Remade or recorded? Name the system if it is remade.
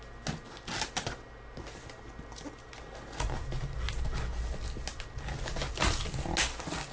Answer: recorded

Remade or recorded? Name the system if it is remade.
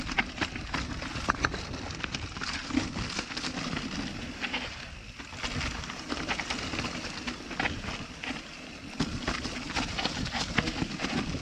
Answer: recorded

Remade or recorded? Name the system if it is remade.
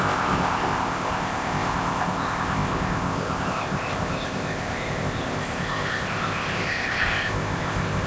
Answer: remade, codec, ZipCodec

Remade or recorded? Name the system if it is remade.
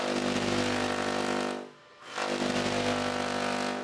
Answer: recorded